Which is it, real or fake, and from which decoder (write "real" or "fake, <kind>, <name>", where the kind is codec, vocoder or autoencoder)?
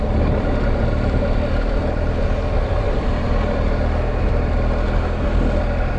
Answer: real